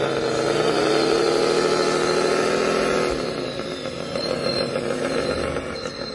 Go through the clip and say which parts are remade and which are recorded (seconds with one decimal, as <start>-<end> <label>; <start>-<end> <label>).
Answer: 0.0-6.1 recorded